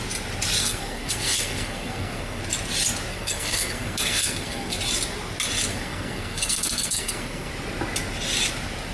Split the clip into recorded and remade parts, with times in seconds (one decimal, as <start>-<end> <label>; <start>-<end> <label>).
0.0-0.6 recorded; 0.6-2.4 remade; 2.4-3.1 recorded; 3.1-4.8 remade; 4.8-5.7 recorded; 5.7-7.5 remade; 7.5-8.9 recorded